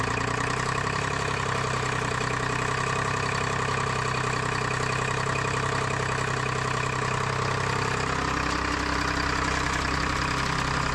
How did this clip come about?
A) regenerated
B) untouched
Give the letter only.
B